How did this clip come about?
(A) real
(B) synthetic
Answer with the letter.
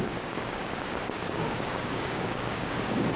B